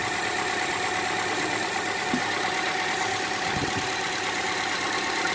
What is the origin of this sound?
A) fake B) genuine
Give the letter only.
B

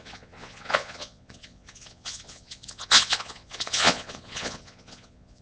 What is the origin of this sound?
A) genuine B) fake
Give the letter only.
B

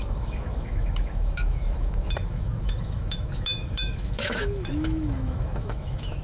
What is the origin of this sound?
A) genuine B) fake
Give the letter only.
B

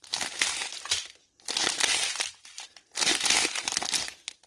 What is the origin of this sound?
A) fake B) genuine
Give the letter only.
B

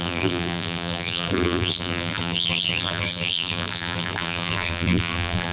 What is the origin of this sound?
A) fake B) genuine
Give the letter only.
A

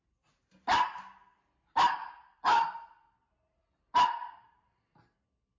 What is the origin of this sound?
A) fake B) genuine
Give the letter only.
B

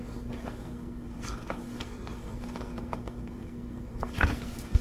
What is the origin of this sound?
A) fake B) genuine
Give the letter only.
A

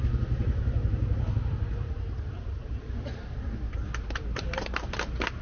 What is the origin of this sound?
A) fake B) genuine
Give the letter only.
B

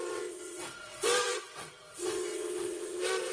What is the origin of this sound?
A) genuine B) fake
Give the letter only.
B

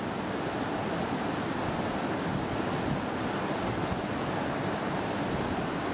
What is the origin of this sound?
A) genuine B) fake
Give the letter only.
A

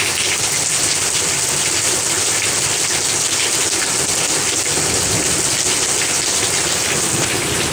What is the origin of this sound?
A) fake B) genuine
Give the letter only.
B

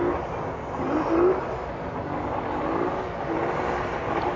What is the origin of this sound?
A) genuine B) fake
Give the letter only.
A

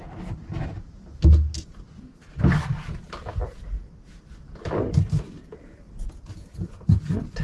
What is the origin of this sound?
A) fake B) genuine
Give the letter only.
B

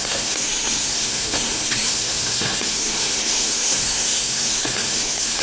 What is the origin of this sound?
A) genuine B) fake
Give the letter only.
B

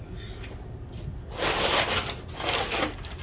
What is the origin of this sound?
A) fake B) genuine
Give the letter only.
B